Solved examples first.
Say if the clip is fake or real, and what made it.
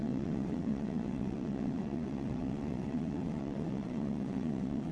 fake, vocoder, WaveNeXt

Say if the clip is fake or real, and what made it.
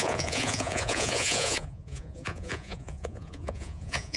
fake, vocoder, Vocos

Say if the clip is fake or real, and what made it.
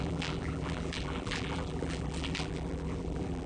fake, vocoder, BigVGAN v2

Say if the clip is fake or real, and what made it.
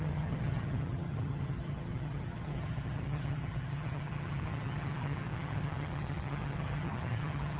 fake, vocoder, HiFi-GAN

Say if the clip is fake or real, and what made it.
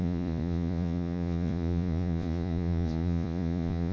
fake, vocoder, Vocos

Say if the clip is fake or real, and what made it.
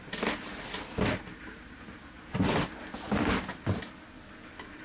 real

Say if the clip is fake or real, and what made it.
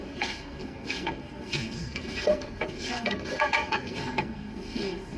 fake, codec, SNAC